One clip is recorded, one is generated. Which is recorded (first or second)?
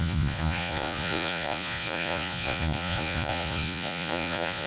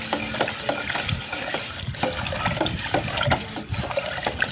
second